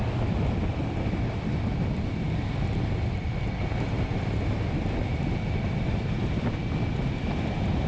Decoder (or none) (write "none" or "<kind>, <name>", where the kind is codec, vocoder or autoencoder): vocoder, BigVGAN v2